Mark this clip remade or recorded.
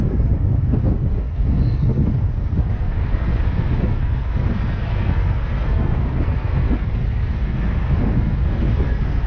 remade